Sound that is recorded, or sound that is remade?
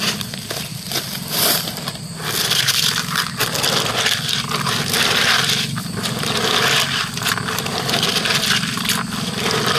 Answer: recorded